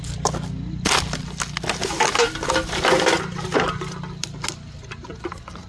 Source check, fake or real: real